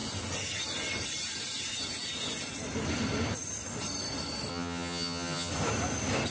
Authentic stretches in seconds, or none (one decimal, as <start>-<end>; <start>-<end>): 0.0-4.5; 5.5-6.3